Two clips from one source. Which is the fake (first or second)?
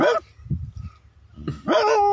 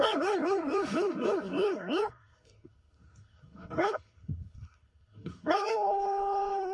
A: second